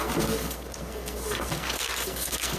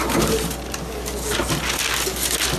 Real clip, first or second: second